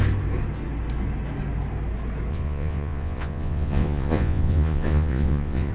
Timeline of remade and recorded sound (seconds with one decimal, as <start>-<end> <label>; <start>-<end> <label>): 0.0-2.3 recorded; 2.3-5.7 remade